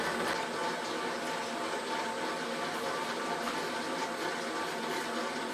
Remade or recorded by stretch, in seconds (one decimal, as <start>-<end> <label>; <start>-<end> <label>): 0.0-5.5 recorded